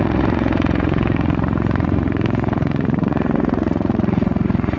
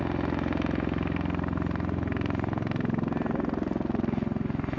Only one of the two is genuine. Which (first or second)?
second